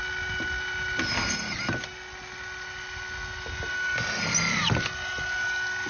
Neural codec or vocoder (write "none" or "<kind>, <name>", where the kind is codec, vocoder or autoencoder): none